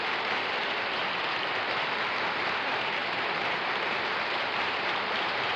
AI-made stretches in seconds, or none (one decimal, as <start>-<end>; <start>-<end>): 0.0-1.5; 2.3-5.6